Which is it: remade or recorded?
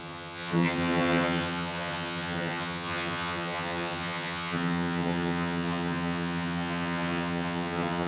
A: remade